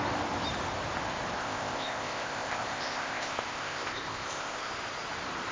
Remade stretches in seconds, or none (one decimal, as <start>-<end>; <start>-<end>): 1.4-4.7